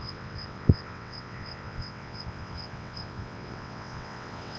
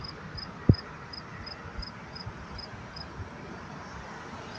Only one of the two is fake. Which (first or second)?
first